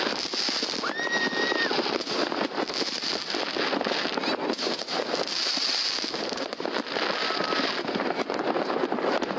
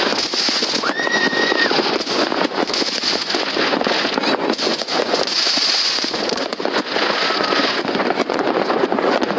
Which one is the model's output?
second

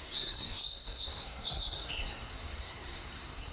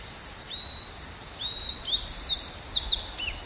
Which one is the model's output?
first